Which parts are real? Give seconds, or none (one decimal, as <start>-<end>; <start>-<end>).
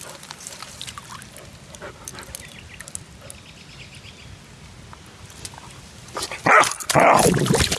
0.0-7.8